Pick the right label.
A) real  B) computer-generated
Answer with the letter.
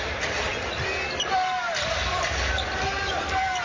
A